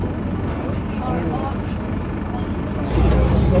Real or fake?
real